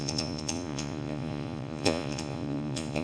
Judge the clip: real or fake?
fake